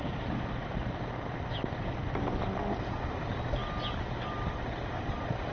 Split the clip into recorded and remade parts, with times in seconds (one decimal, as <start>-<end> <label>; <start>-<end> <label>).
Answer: 0.0-5.5 recorded